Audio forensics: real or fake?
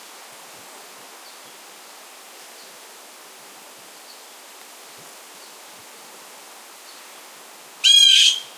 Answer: real